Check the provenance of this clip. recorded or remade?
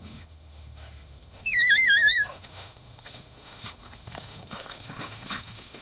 remade